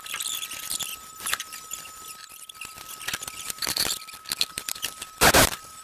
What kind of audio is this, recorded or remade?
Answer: remade